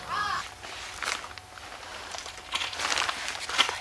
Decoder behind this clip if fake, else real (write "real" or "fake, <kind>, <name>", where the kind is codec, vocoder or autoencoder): real